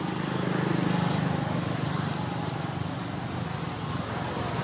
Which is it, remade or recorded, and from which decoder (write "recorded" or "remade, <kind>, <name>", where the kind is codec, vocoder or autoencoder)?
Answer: recorded